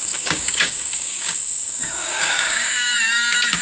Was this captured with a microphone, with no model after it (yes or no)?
no